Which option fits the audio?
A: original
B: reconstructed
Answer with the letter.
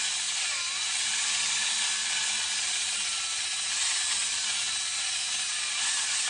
A